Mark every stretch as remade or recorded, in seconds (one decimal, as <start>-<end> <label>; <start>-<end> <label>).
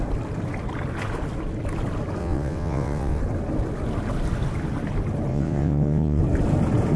0.0-2.2 recorded; 2.2-3.2 remade; 3.2-5.3 recorded; 5.3-6.2 remade; 6.2-7.0 recorded